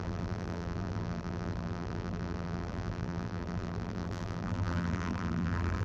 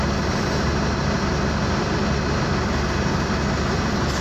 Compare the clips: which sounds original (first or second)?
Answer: second